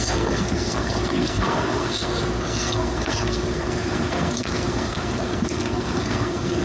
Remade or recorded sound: remade